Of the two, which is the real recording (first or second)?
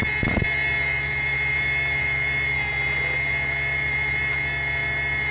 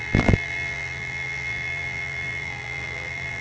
first